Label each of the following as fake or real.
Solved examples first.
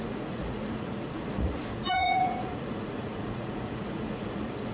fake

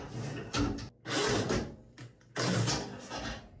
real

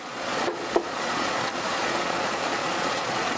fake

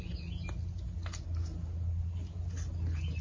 real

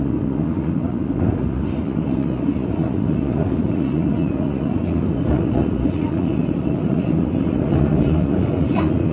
fake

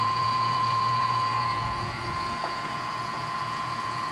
fake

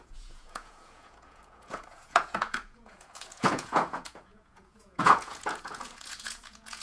fake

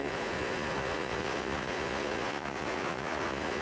fake